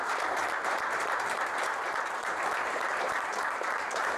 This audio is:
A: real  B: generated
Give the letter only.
B